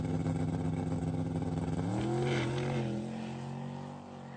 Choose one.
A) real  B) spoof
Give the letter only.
A